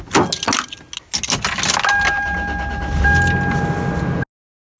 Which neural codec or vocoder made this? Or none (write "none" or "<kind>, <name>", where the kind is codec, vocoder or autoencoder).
none